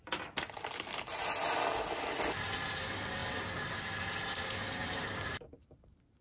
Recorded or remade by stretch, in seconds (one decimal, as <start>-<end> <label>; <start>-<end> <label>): 0.0-6.2 recorded